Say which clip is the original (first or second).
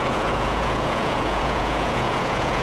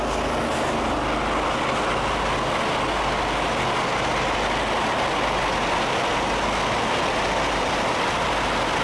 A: second